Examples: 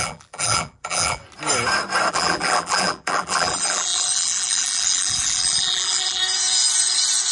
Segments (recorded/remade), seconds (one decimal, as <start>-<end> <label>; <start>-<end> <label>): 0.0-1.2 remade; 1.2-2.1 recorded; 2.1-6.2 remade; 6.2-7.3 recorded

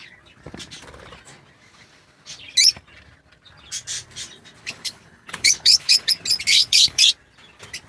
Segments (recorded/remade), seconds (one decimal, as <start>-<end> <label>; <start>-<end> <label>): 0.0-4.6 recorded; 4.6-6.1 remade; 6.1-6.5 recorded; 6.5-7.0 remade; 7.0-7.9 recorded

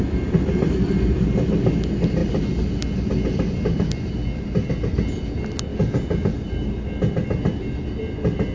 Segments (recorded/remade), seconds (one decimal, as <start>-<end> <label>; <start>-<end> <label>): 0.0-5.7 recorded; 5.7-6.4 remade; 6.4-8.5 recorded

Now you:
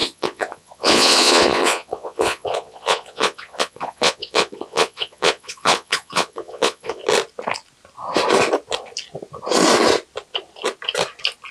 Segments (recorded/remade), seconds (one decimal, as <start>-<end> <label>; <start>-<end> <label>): 0.0-7.0 remade; 7.0-11.5 recorded

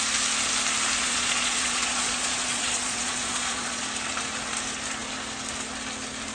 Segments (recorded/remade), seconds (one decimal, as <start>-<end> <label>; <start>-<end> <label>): 0.0-1.0 recorded; 1.0-3.8 remade; 3.8-6.3 recorded

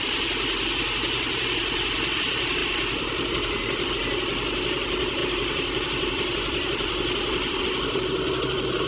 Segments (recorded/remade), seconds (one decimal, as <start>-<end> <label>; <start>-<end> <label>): 0.0-2.6 recorded; 2.6-3.9 remade; 3.9-5.2 recorded; 5.2-7.6 remade; 7.6-8.9 recorded

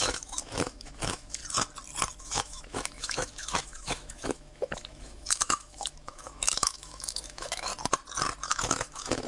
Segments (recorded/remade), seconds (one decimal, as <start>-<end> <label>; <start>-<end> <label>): 0.0-1.4 remade; 1.4-2.2 recorded; 2.2-7.7 remade; 7.7-8.4 recorded; 8.4-9.3 remade